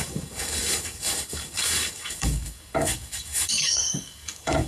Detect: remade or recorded remade